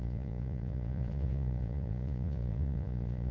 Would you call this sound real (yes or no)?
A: no